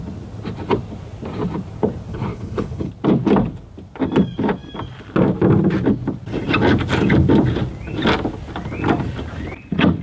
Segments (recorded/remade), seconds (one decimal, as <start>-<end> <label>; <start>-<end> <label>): 0.0-2.1 recorded; 2.1-2.9 remade; 2.9-10.0 recorded